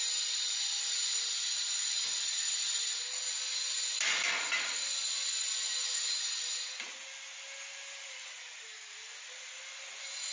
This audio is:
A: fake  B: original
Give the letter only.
B